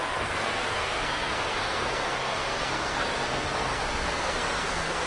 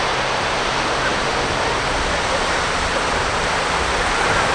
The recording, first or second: second